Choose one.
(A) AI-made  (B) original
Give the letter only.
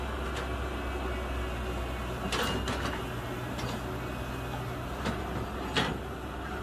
B